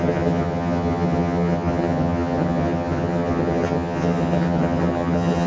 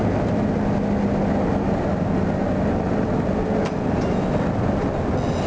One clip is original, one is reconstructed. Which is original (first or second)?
second